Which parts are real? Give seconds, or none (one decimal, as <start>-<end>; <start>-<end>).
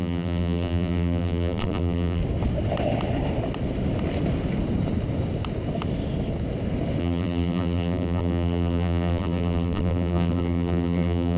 2.2-7.0